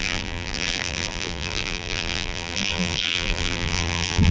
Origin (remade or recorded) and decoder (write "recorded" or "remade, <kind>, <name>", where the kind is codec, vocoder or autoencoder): remade, vocoder, BigVGAN v2